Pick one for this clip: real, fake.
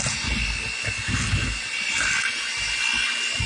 real